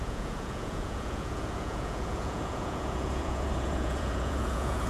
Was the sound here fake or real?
fake